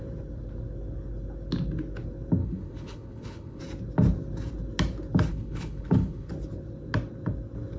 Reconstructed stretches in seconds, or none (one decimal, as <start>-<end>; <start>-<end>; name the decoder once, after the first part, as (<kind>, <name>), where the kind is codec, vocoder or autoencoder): 2.4-3.6 (codec, HILCodec); 5.3-6.3